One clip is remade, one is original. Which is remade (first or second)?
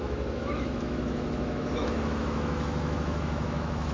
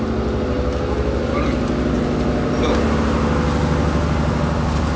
first